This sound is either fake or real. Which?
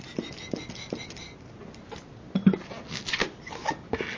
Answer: real